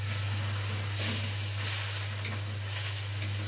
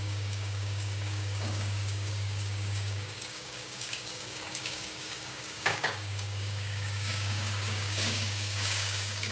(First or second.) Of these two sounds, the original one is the first